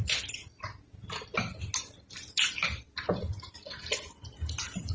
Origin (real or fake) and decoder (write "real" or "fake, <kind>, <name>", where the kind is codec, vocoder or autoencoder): real